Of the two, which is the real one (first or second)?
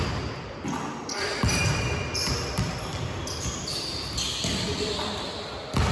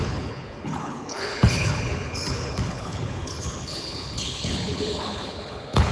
first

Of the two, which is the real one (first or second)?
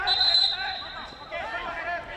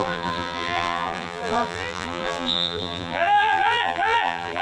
first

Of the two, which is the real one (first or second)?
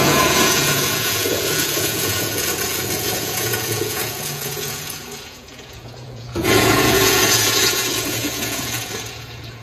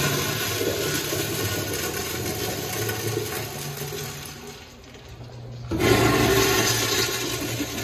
second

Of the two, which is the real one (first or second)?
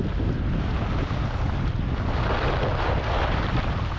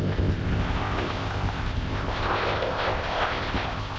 first